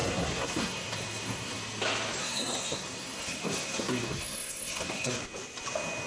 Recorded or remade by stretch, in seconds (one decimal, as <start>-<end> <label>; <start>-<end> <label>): 0.0-1.6 remade; 1.6-2.2 recorded; 2.2-5.2 remade; 5.2-6.1 recorded